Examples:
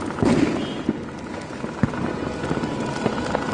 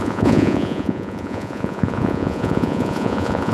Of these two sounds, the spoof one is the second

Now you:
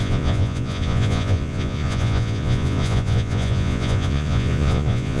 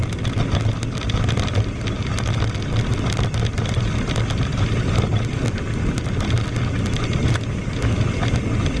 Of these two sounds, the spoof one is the first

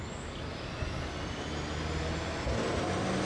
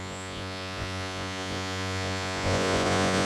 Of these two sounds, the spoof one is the second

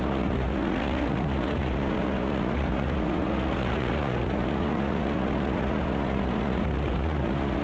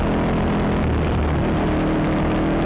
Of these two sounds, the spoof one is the first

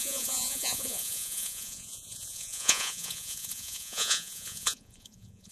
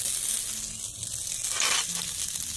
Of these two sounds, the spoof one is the first